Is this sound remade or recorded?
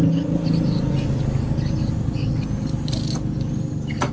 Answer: recorded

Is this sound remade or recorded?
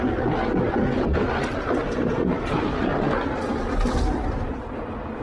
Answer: recorded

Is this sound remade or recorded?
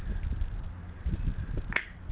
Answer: remade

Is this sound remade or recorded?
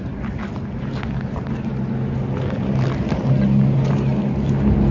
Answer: recorded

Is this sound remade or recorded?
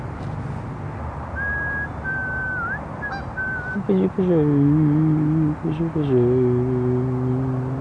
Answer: recorded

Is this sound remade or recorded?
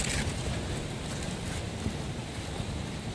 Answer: recorded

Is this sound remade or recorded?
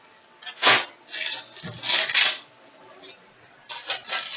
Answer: recorded